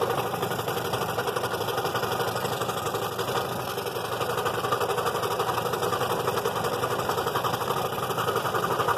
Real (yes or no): yes